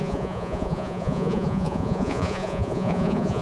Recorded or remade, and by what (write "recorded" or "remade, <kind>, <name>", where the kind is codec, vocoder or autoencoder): remade, vocoder, Vocos